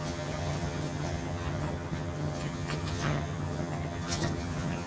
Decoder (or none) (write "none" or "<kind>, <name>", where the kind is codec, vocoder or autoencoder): vocoder, HiFi-GAN